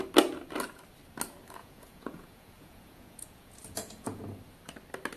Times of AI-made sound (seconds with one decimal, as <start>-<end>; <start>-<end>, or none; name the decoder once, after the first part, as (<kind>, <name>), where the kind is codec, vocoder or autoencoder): 1.6-4.2 (vocoder, Vocos)